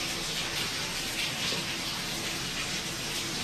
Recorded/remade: recorded